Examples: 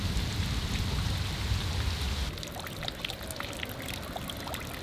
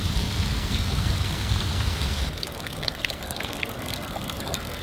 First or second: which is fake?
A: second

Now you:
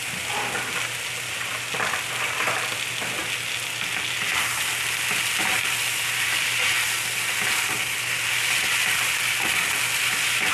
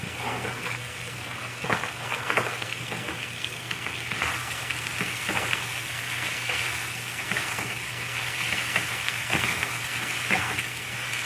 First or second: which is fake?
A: second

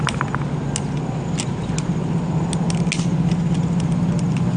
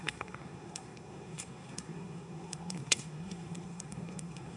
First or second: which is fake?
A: second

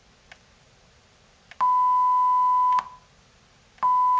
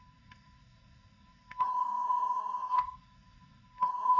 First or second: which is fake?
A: second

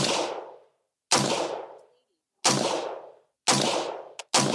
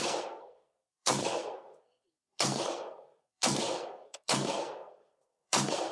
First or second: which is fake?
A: second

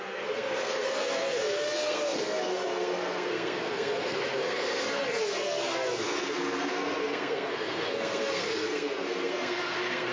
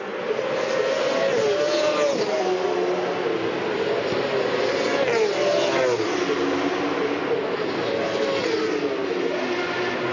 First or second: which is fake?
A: first